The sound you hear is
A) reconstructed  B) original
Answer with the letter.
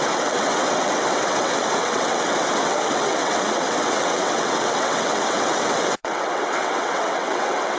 A